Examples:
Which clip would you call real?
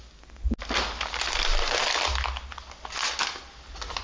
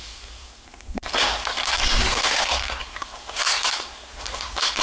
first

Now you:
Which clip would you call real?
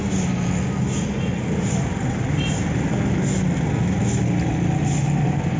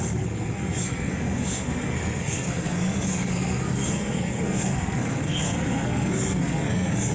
first